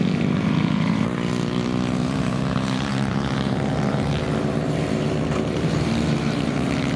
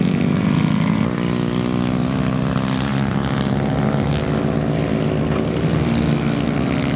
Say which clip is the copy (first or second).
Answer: first